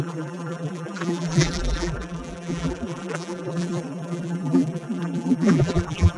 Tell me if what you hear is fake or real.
fake